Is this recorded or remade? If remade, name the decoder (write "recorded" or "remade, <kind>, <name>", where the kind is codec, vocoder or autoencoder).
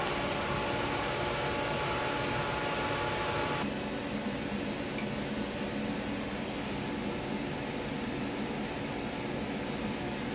recorded